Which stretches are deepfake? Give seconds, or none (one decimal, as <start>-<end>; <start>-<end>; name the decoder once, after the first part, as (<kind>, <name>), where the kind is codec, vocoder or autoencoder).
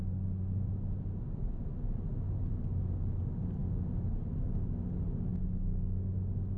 none